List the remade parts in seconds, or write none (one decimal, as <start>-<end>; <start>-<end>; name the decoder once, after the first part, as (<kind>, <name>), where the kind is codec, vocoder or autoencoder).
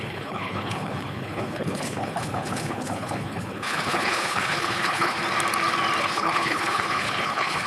0.0-5.2 (codec, HILCodec); 6.0-7.7